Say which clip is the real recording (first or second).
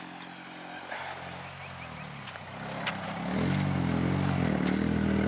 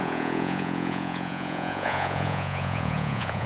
first